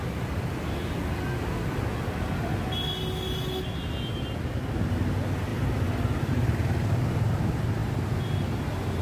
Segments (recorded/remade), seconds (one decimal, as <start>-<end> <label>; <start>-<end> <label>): 0.0-9.0 recorded